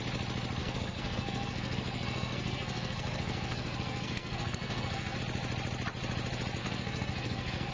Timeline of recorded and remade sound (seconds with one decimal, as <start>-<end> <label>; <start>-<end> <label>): 0.0-0.6 recorded; 0.6-5.2 remade; 5.2-6.6 recorded; 6.6-7.7 remade